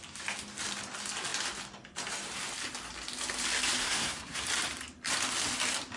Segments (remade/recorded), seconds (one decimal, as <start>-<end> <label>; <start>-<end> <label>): 0.0-3.8 recorded; 3.8-4.4 remade; 4.4-6.0 recorded